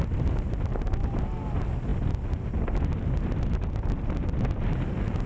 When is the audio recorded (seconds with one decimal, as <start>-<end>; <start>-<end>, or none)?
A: 0.0-5.3